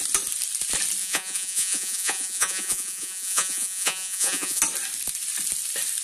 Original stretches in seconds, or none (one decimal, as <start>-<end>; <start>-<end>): 0.0-1.0; 4.6-6.0